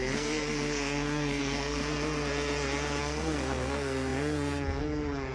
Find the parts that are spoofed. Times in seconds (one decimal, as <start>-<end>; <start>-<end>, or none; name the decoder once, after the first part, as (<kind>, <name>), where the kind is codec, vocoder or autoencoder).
0.0-1.8 (codec, SNAC); 3.0-5.3